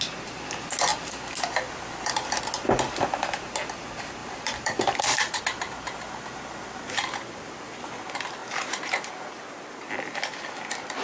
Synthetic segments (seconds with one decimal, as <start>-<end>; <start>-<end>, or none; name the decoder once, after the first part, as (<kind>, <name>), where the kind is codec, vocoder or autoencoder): 4.2-5.4 (vocoder, BigVGAN v2)